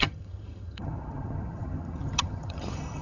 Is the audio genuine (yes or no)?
no